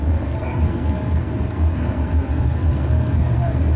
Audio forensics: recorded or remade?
remade